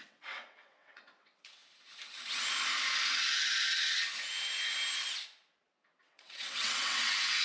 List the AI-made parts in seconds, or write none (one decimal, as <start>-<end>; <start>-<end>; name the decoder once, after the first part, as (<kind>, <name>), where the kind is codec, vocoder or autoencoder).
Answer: 0.0-1.6 (vocoder, WaveNeXt); 6.0-7.4